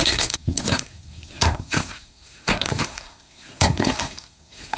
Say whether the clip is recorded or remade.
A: remade